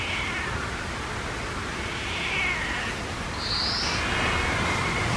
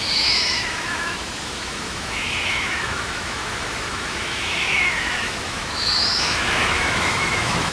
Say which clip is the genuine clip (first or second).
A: first